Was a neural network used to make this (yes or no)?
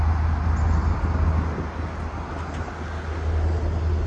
no